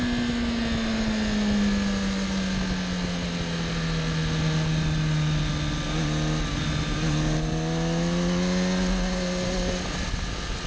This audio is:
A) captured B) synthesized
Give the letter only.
A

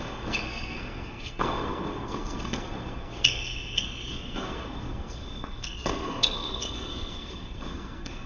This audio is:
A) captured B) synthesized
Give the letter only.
B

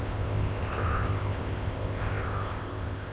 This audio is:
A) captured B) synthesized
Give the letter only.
B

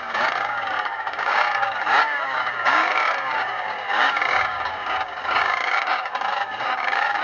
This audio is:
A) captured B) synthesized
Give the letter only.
B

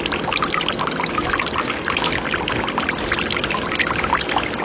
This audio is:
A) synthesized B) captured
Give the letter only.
B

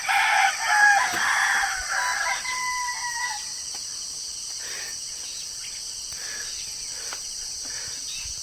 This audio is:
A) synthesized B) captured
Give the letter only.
B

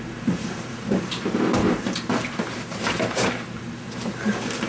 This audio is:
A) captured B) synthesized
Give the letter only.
B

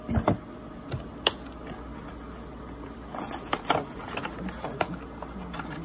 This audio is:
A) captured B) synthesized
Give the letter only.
A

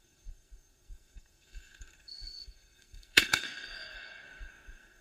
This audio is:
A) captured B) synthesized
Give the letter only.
B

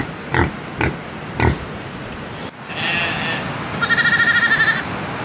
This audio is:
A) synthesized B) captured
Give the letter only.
B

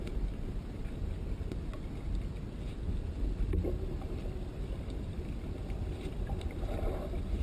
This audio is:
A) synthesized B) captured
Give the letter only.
B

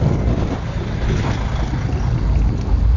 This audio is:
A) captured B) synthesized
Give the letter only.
A